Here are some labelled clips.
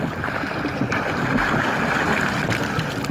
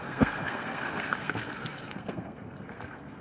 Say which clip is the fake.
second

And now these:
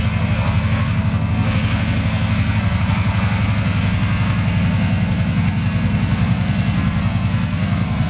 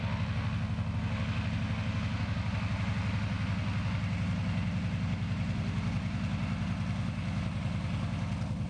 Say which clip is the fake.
first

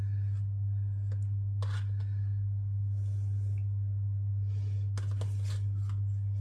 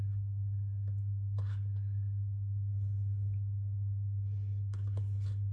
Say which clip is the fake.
second